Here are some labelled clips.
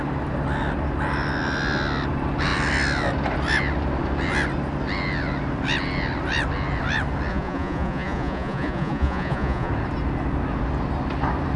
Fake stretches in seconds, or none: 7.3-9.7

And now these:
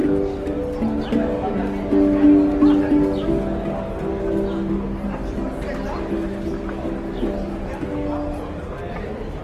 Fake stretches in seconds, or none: none

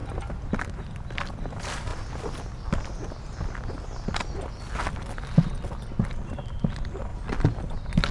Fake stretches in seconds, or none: 0.6-1.9; 4.9-7.1; 7.6-8.1